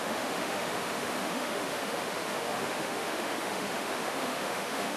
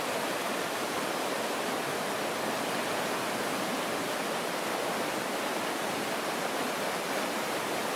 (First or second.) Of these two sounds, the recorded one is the second